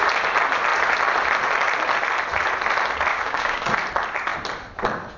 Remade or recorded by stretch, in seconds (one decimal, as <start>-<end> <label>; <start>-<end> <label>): 0.0-3.1 recorded; 3.1-3.6 remade; 3.6-5.2 recorded